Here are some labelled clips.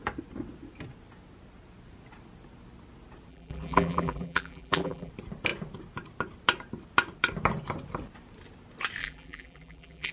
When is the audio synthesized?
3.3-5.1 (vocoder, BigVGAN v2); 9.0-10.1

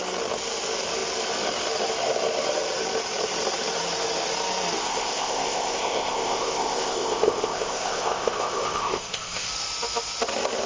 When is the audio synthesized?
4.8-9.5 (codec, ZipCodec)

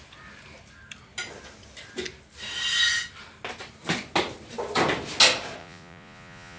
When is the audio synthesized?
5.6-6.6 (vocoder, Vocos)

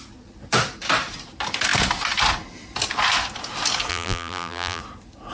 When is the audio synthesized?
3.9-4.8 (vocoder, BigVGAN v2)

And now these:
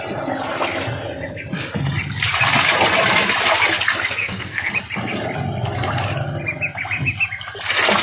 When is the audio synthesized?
4.2-4.7 (codec, SNAC)

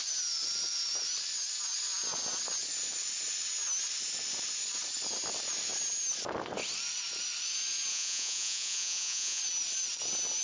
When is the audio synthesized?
7.9-9.4 (vocoder, Vocos)